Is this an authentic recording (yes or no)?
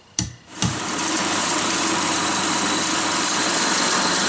no